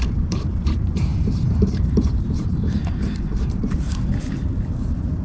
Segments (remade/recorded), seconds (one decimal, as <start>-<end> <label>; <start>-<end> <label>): 0.0-5.2 remade